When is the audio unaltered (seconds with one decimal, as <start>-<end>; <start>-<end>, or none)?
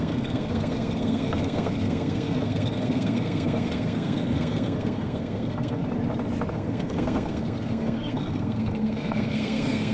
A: 5.8-6.5